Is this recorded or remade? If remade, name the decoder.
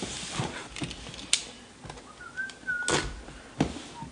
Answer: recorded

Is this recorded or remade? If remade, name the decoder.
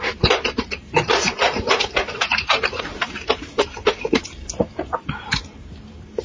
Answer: remade, vocoder, BigVGAN v2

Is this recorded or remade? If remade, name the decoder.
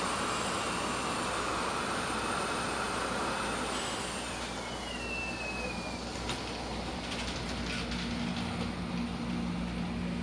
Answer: recorded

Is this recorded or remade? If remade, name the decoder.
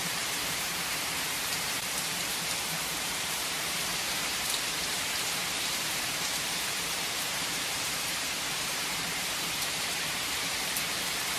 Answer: remade, vocoder, BigVGAN v2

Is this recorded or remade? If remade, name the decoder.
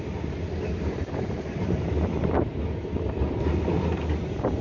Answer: recorded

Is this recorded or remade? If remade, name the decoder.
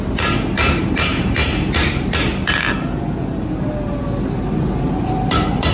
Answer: recorded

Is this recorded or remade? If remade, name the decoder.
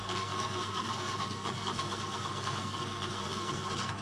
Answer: remade, codec, SNAC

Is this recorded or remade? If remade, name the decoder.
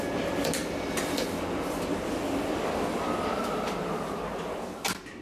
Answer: recorded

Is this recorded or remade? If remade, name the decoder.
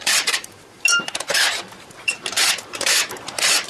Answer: remade, vocoder, BigVGAN v2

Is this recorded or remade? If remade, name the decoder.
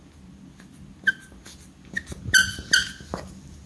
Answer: recorded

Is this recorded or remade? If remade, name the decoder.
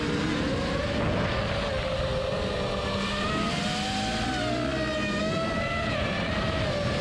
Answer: recorded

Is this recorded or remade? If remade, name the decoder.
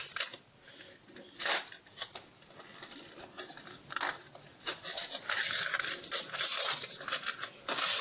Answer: recorded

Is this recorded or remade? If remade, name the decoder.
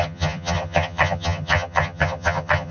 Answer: remade, vocoder, HiFi-GAN